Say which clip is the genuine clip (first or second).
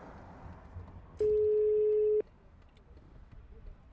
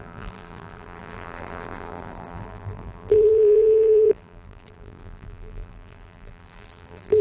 first